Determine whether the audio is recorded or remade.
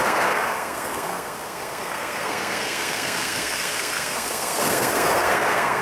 remade